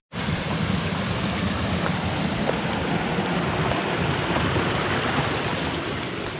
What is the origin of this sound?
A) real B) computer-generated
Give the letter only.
A